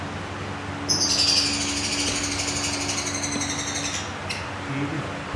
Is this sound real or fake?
real